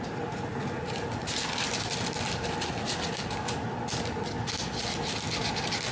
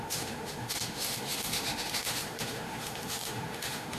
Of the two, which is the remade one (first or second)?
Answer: second